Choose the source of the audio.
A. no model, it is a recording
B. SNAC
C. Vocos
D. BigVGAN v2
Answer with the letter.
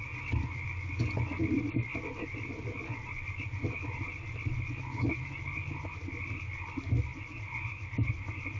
A